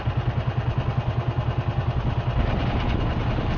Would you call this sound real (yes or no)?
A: yes